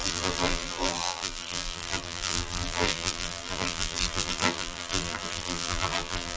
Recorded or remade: remade